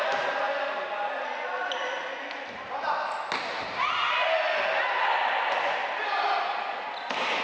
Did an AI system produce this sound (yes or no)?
no